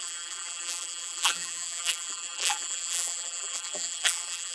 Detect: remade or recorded remade